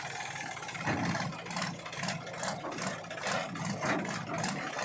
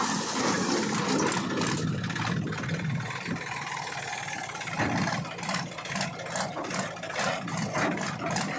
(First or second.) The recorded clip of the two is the first